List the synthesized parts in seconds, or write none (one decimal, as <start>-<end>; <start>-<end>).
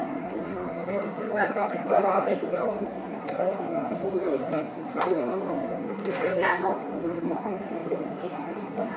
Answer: 0.0-9.0